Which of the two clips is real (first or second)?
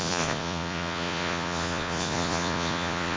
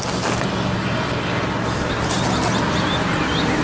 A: second